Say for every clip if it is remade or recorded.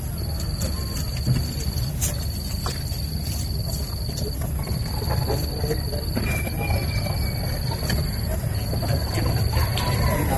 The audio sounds recorded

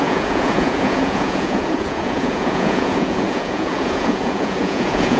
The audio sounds remade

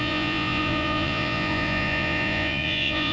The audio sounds remade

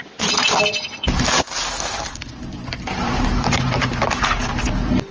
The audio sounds recorded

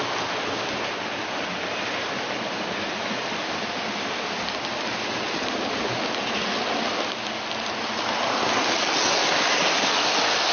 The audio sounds recorded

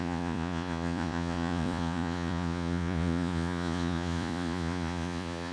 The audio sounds remade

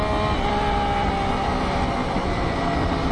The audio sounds recorded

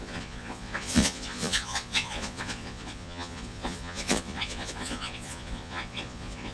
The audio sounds remade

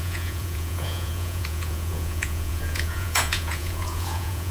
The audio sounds remade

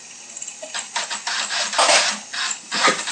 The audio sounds recorded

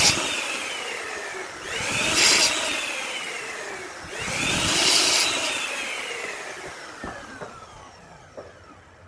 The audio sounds recorded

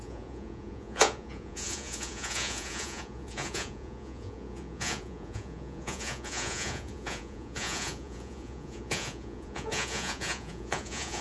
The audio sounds remade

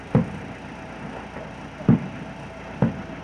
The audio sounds recorded